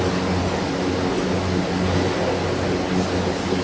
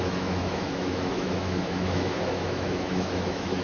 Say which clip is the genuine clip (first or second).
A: first